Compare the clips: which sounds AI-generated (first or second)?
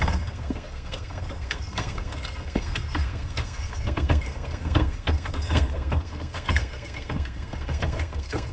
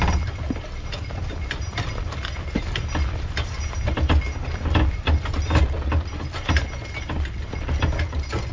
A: first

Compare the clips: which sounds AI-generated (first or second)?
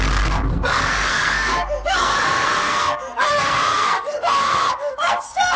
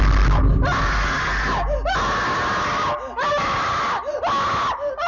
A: first